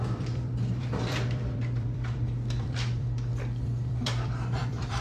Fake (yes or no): yes